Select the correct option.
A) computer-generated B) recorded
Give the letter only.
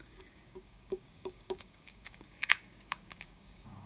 A